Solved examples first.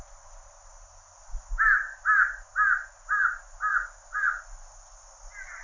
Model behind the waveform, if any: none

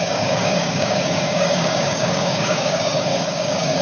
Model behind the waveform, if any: codec, DAC